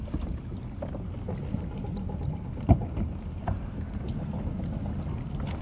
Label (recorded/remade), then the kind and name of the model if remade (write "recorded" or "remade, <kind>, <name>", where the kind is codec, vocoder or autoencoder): recorded